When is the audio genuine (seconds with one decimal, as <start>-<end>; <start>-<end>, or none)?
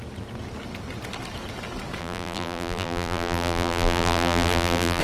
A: 0.0-2.0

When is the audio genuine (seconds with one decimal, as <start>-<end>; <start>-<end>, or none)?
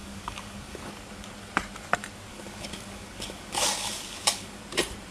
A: 0.9-2.3; 4.6-5.1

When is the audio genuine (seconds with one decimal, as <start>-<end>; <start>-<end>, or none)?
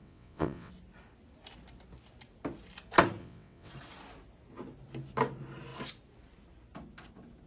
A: 0.7-3.2; 3.7-7.5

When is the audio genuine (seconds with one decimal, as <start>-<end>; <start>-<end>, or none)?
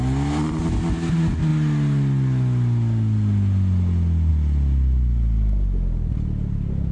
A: 0.0-6.9